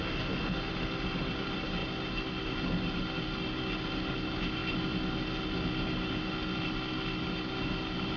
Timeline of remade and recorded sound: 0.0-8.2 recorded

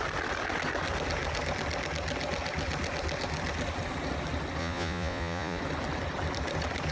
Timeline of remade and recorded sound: 0.0-4.6 recorded; 4.6-5.6 remade; 5.6-6.9 recorded

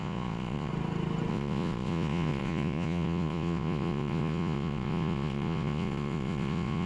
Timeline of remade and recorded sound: 0.0-0.7 remade; 0.7-1.3 recorded; 1.3-6.9 remade